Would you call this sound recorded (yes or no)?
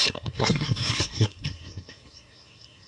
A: no